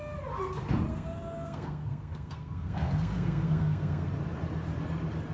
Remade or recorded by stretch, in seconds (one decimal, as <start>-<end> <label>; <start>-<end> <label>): 0.0-0.9 recorded; 0.9-4.1 remade; 4.1-5.3 recorded

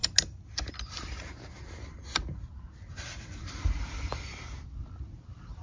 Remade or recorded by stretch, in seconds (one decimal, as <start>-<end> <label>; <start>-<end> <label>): 0.0-5.6 recorded

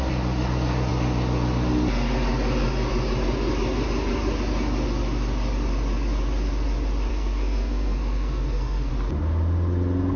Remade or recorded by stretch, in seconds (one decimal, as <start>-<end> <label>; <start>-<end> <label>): 0.0-7.1 recorded; 7.1-8.9 remade; 8.9-10.2 recorded

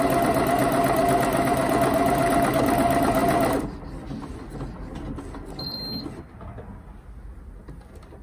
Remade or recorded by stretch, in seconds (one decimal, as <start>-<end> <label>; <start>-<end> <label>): 0.0-8.2 recorded